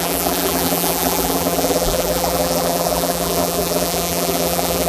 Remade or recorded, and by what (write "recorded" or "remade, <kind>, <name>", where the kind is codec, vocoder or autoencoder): remade, vocoder, BigVGAN v2